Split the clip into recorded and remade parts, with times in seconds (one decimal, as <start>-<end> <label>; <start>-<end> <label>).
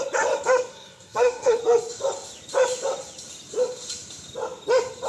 0.0-0.7 recorded; 0.7-1.6 remade; 1.6-5.1 recorded